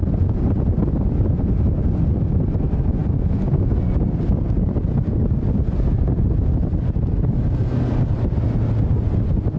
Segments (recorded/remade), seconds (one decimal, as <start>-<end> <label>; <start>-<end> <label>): 0.0-0.8 remade; 0.8-9.6 recorded